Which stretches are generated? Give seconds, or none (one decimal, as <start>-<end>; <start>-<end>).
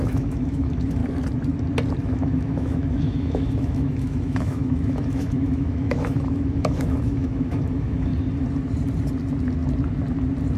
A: 0.0-1.0; 2.0-8.1